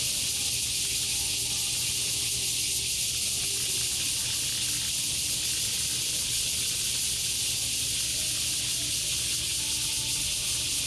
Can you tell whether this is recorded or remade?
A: recorded